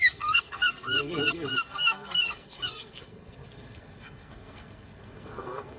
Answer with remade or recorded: remade